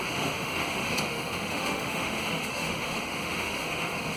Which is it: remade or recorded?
remade